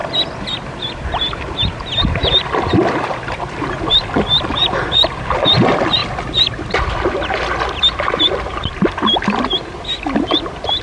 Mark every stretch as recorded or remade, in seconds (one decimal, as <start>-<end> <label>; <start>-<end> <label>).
0.0-0.7 recorded; 0.7-9.0 remade; 9.0-9.7 recorded; 9.7-10.8 remade

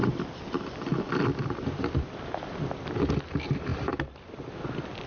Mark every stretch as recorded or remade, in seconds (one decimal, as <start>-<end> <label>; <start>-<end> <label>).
0.0-3.1 remade; 3.1-5.1 recorded

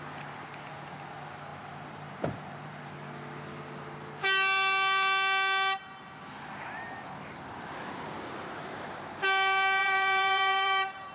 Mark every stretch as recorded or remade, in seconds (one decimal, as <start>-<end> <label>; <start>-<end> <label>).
0.0-1.5 recorded; 1.5-2.9 remade; 2.9-9.8 recorded; 9.8-11.1 remade

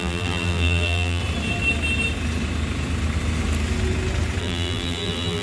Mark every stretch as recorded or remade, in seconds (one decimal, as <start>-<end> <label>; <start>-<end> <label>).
0.0-1.2 remade; 1.2-4.4 recorded; 4.4-5.4 remade

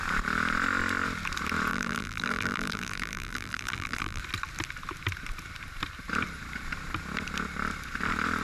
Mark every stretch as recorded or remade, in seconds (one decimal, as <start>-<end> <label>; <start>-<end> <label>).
0.0-1.7 recorded; 1.7-4.2 remade; 4.2-8.4 recorded

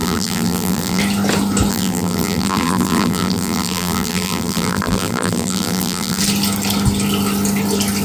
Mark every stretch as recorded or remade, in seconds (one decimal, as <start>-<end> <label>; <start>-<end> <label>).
0.0-1.0 remade; 1.0-1.7 recorded; 1.7-6.2 remade; 6.2-8.0 recorded

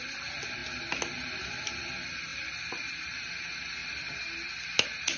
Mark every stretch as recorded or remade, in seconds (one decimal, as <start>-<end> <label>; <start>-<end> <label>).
0.0-5.2 recorded

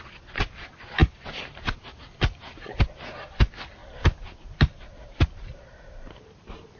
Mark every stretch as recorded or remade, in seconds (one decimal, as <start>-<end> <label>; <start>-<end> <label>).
0.0-1.0 recorded; 1.0-2.8 remade; 2.8-5.0 recorded; 5.0-5.6 remade; 5.6-6.8 recorded